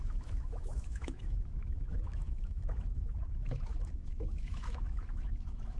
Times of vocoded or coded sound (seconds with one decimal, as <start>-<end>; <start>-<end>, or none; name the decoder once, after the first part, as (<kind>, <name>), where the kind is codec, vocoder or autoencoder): 0.0-5.8 (autoencoder, DAC-VAE)